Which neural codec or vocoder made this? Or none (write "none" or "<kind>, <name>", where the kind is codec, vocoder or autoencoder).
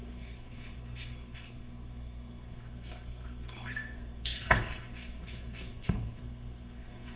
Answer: codec, SNAC